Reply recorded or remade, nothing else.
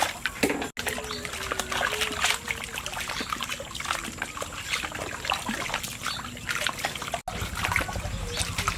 recorded